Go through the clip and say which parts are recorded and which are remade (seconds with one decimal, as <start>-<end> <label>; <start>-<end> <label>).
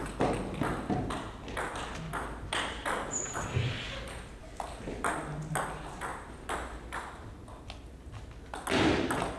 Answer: 0.0-9.4 recorded